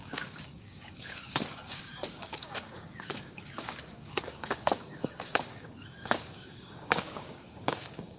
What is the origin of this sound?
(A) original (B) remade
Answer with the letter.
B